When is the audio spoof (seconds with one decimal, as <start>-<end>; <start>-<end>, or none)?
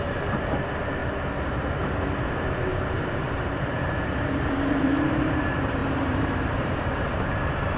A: 0.0-1.0; 2.3-7.8